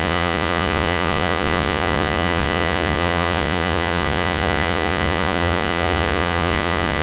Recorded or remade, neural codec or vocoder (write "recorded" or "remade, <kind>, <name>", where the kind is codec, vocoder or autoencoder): remade, vocoder, Vocos